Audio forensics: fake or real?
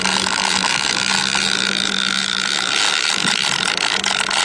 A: real